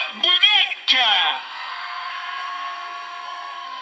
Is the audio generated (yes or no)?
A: yes